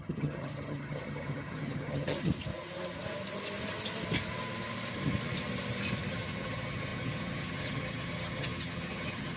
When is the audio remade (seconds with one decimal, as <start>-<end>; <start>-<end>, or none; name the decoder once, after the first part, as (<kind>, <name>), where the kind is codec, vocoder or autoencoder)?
0.0-2.3 (vocoder, HiFi-GAN); 6.1-9.4